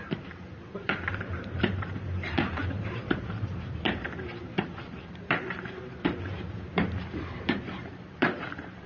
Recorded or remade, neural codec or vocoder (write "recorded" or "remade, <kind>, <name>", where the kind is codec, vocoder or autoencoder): remade, vocoder, BigVGAN v2